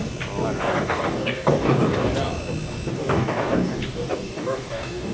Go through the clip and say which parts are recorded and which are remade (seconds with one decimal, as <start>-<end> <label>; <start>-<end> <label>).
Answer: 0.0-0.6 recorded; 0.6-2.1 remade; 2.1-2.9 recorded; 2.9-5.1 remade